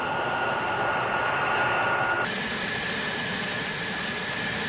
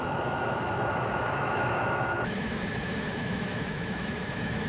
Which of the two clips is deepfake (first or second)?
second